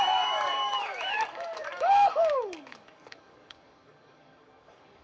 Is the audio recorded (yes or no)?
no